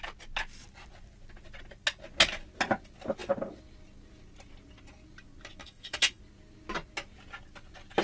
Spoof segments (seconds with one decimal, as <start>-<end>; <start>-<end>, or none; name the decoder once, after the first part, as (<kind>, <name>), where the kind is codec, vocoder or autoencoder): 5.6-6.2 (autoencoder, DAC-VAE)